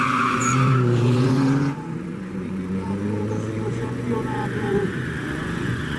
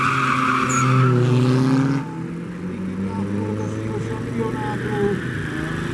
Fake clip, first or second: first